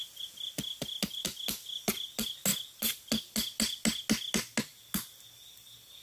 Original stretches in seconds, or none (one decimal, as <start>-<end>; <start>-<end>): 0.0-6.0